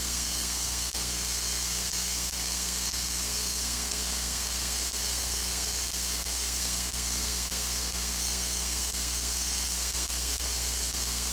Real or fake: fake